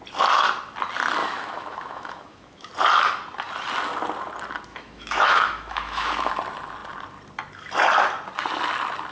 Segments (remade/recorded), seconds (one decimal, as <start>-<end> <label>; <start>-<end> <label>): 0.0-1.2 recorded; 1.2-2.7 remade; 2.7-4.7 recorded; 4.7-6.3 remade; 6.3-9.1 recorded